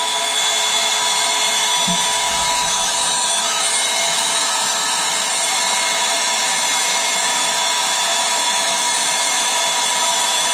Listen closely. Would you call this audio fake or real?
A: fake